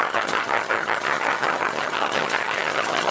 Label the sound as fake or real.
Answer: fake